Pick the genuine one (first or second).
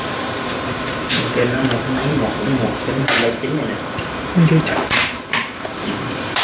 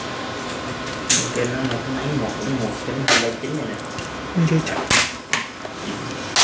second